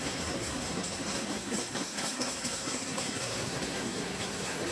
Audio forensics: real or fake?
fake